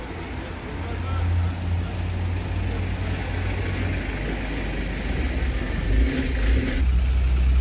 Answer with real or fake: real